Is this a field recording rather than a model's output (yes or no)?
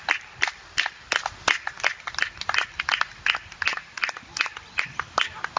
yes